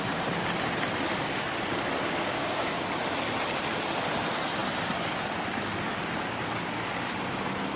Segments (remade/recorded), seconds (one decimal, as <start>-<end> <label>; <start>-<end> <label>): 0.0-2.3 recorded; 2.3-2.8 remade; 2.8-7.8 recorded